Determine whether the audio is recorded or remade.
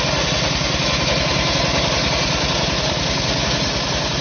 recorded